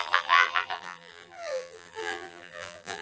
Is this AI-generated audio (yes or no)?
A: yes